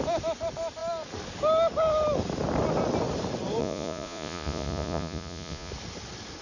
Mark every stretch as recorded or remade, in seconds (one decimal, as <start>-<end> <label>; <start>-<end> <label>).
0.0-3.6 recorded; 3.6-5.7 remade; 5.7-6.4 recorded